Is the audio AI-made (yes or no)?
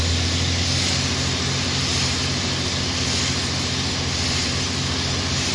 no